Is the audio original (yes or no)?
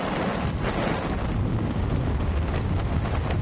yes